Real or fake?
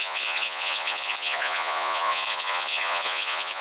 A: fake